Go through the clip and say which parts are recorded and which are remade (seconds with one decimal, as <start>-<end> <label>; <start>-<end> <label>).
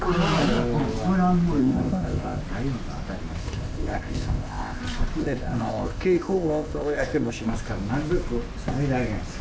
0.0-1.6 recorded; 1.6-2.4 remade; 2.4-3.4 recorded; 3.4-4.8 remade; 4.8-5.2 recorded; 5.2-7.5 remade; 7.5-9.4 recorded